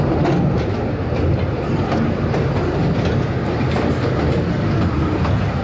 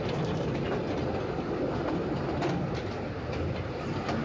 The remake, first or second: second